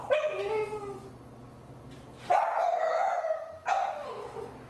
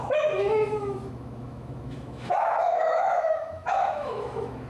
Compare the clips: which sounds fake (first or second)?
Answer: second